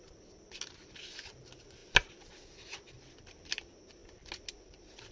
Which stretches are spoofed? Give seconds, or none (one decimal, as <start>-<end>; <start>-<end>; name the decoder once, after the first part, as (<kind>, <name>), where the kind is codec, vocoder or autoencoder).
none